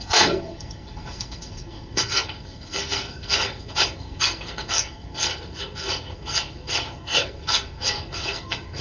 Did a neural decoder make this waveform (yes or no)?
yes